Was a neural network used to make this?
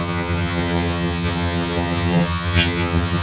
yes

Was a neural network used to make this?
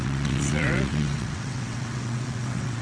yes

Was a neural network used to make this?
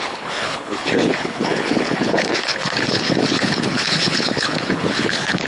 yes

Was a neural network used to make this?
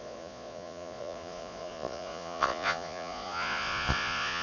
yes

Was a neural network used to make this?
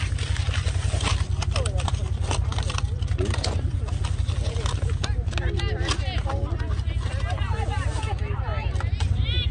no